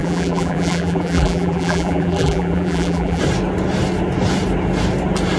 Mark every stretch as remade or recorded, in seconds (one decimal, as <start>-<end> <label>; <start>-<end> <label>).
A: 0.0-3.2 remade; 3.2-5.4 recorded